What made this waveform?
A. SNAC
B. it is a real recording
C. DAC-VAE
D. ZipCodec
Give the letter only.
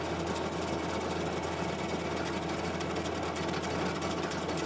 B